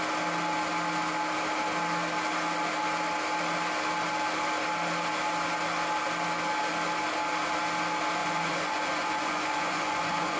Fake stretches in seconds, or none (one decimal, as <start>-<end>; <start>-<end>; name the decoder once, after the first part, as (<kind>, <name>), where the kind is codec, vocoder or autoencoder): 8.2-10.4 (vocoder, Vocos)